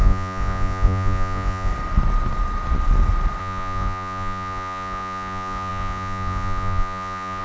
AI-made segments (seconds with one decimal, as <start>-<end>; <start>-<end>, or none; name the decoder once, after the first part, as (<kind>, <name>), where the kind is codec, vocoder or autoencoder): 0.0-1.7 (vocoder, Vocos); 3.4-7.4